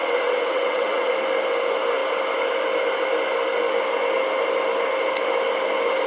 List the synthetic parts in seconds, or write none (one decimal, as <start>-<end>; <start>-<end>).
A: 0.0-1.1